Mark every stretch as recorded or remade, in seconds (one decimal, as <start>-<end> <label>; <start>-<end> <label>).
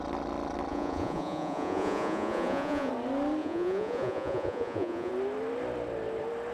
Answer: 0.0-0.7 recorded; 0.7-2.9 remade; 2.9-3.4 recorded; 3.4-5.1 remade; 5.1-6.5 recorded